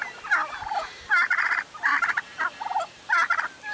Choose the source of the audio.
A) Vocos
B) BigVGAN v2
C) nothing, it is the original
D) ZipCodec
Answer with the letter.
C